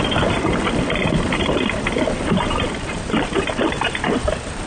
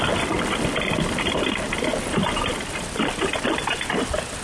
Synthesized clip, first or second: first